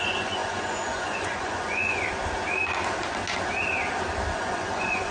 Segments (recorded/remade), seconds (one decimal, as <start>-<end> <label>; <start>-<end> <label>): 0.0-2.0 remade; 2.0-4.3 recorded; 4.3-5.1 remade